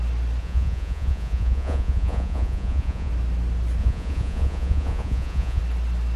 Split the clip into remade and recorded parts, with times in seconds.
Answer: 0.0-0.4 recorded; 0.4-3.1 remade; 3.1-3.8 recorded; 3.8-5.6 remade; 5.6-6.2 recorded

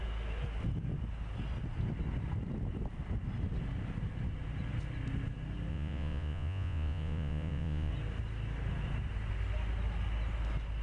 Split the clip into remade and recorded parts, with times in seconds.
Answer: 0.0-5.7 recorded; 5.7-7.9 remade; 7.9-10.8 recorded